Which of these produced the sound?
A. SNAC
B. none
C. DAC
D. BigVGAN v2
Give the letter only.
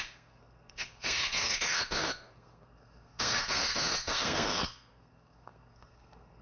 A